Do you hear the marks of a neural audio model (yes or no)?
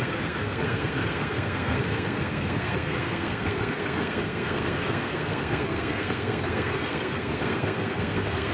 yes